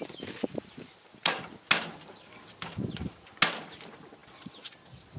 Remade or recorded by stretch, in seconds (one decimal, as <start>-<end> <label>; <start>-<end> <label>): 0.0-5.2 recorded